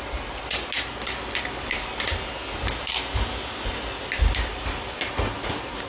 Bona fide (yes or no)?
yes